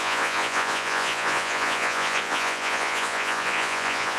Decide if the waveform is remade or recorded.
remade